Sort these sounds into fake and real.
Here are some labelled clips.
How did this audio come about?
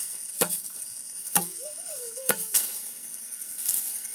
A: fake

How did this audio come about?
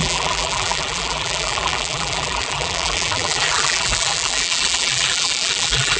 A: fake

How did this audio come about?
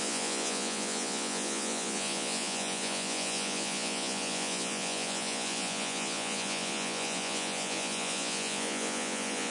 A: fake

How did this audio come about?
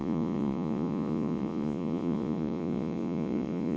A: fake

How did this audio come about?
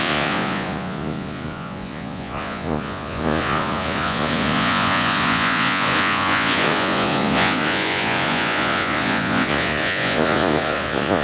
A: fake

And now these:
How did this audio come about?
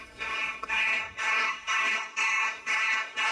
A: fake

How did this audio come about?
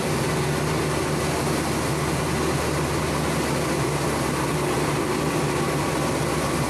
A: real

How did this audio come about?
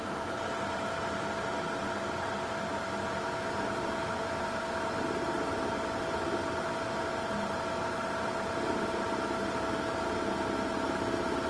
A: real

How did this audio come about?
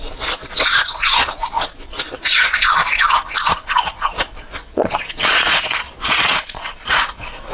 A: fake